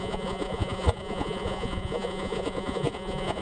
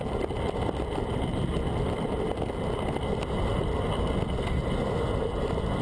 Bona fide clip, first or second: second